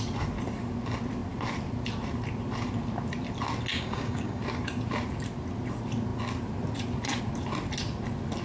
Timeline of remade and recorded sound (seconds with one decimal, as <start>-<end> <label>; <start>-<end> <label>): 0.0-3.7 recorded; 3.7-4.4 remade; 4.4-8.4 recorded